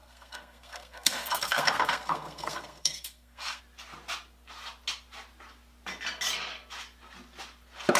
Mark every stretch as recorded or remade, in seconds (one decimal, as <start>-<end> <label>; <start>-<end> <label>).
0.0-3.6 remade; 3.6-8.0 recorded